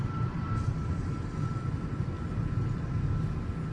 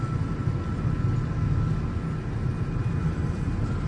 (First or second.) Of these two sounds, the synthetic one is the first